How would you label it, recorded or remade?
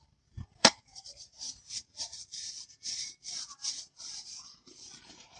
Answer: remade